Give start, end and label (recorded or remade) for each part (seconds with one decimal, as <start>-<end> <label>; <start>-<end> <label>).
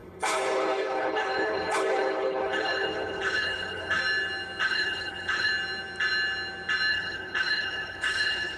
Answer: 0.0-4.0 remade; 4.0-4.6 recorded; 4.6-5.5 remade; 5.5-6.9 recorded; 6.9-8.6 remade